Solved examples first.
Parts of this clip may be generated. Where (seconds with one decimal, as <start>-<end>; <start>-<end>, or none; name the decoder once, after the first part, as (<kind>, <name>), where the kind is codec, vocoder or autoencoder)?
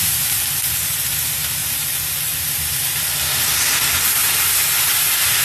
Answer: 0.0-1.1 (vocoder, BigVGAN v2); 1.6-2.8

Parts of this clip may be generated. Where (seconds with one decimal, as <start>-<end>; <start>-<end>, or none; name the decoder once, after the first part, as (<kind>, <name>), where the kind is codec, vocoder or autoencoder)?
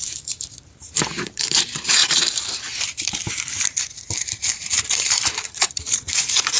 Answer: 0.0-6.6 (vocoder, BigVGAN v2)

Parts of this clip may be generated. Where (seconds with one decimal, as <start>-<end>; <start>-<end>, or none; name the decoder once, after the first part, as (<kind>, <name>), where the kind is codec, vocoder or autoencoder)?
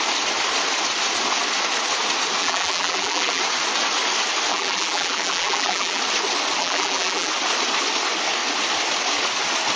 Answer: 2.4-3.4 (vocoder, BigVGAN v2); 4.5-6.0; 6.6-7.3